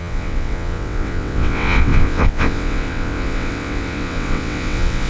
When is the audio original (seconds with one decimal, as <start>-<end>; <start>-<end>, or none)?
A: none